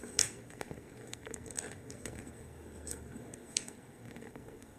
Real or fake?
fake